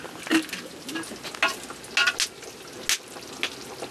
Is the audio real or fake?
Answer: real